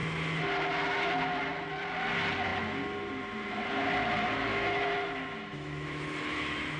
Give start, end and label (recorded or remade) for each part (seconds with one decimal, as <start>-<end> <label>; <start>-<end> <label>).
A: 0.0-4.5 recorded; 4.5-6.8 remade